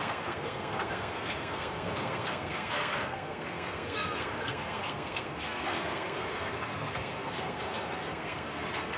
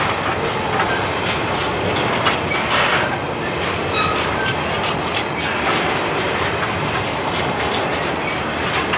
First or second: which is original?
second